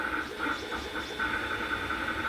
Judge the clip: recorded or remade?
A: recorded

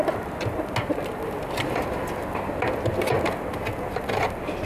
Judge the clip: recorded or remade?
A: recorded